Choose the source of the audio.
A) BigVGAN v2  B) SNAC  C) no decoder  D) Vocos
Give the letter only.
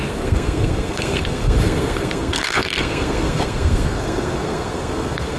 B